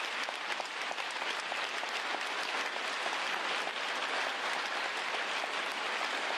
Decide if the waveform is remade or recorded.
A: remade